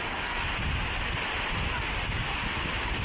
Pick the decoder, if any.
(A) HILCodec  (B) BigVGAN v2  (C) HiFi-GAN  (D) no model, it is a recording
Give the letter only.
D